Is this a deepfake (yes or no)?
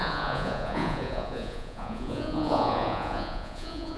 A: yes